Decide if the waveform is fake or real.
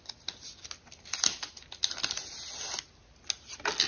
real